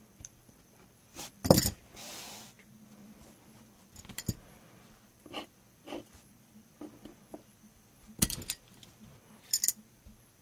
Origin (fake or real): fake